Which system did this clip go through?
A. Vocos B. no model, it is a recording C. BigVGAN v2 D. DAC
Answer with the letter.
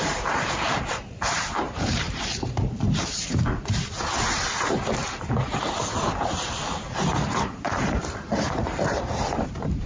C